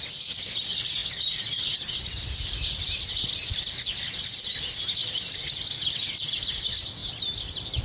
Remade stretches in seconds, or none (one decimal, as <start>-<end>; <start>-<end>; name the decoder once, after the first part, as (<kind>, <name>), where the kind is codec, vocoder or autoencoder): 5.0-6.2 (vocoder, BigVGAN v2); 7.0-7.8